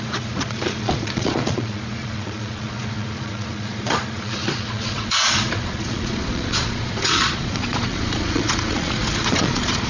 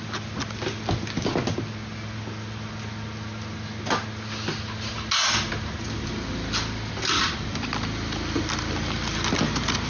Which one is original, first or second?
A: second